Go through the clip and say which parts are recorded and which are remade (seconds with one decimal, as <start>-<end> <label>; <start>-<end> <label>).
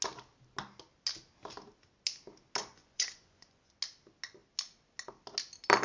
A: 0.0-2.6 recorded; 2.6-3.7 remade; 3.7-5.8 recorded